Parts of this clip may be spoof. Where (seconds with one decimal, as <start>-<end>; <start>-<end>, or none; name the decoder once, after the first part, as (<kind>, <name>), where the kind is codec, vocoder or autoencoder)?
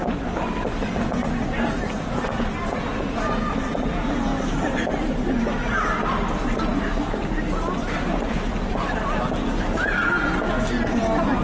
none